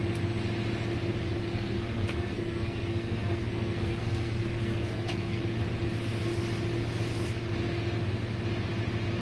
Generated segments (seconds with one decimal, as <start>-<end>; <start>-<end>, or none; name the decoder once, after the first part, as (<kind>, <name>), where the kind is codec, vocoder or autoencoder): 1.4-5.4 (codec, SNAC)